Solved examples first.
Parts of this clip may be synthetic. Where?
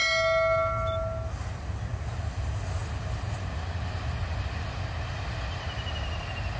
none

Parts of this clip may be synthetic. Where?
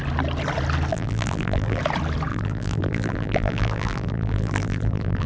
0.9-1.8; 2.3-5.3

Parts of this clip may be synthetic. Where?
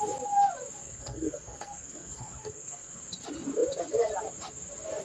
0.8-3.0